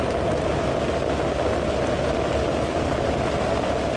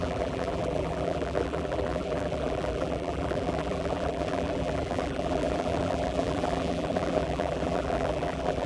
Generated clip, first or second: second